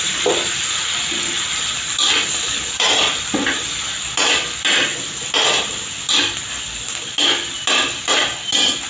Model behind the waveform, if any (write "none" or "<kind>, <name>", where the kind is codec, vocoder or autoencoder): none